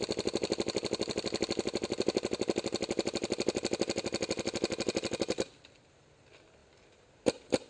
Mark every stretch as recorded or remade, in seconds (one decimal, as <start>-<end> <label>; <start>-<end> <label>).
0.0-7.7 recorded